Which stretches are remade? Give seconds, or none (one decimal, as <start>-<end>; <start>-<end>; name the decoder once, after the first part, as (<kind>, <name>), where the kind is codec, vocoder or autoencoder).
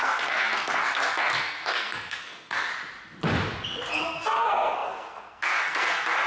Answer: 0.0-2.7 (codec, SNAC); 4.0-6.3